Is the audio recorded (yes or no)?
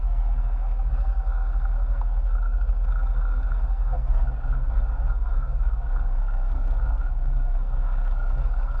no